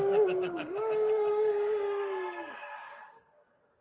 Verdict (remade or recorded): remade